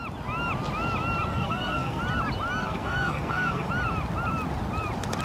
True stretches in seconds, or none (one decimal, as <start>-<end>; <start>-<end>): 0.0-1.3; 2.0-2.6; 3.7-5.2